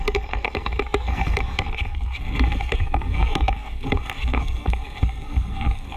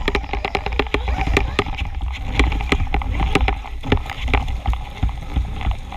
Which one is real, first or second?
second